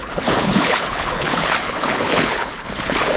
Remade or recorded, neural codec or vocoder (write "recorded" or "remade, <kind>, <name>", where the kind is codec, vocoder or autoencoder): remade, codec, HILCodec